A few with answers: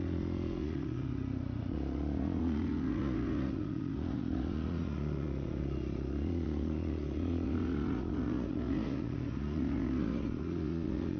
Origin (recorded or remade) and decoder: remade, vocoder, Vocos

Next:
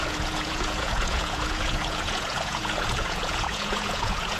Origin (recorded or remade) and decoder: remade, vocoder, Vocos